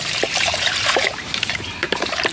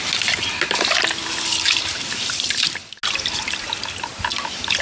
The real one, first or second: second